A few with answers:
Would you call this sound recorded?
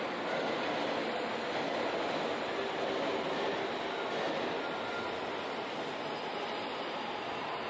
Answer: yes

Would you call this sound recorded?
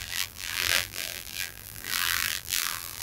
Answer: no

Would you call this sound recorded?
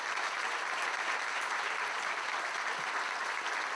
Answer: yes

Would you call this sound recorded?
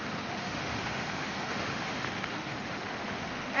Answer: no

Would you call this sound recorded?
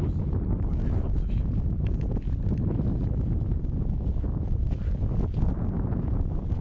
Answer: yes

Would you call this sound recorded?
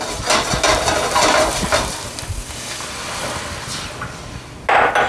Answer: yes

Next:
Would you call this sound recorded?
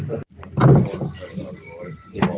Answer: yes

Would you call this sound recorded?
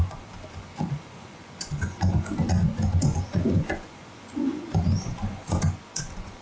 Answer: no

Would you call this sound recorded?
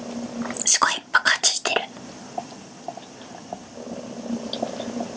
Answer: yes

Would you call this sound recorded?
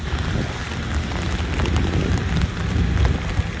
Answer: yes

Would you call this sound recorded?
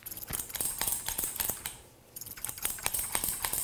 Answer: no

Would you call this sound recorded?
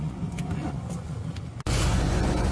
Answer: no